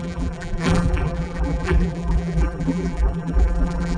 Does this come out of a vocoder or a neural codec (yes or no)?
yes